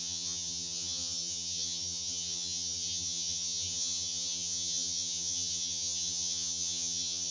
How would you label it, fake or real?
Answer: fake